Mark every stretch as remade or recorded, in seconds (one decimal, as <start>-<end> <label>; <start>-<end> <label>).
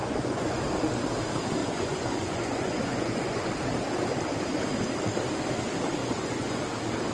0.0-0.6 remade; 0.6-1.6 recorded; 1.6-3.5 remade; 3.5-6.0 recorded; 6.0-6.6 remade; 6.6-7.1 recorded